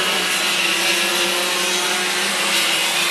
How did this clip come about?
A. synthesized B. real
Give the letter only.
B